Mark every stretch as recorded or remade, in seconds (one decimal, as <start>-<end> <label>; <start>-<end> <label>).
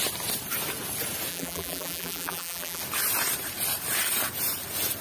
0.0-1.3 recorded; 1.3-2.8 remade; 2.8-5.0 recorded